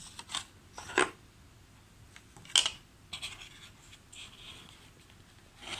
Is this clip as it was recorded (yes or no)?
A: yes